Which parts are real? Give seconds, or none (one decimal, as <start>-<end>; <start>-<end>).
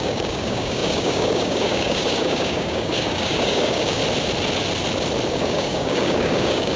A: 4.0-5.3